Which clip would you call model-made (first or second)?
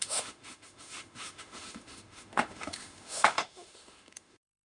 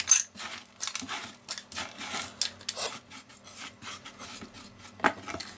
first